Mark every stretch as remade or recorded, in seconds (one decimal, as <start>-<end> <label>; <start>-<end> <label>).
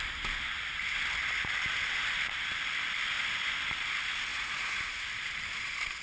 0.0-4.3 recorded; 4.3-5.0 remade; 5.0-6.0 recorded